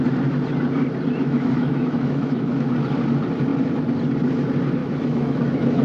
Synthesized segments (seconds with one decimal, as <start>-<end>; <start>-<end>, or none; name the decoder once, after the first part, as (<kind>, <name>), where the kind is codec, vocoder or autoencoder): 1.2-2.7 (autoencoder, DAC-VAE); 4.8-5.8